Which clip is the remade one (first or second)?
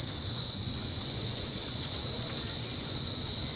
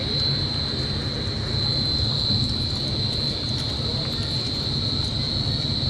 first